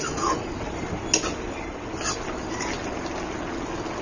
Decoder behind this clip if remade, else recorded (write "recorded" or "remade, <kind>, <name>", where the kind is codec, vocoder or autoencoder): recorded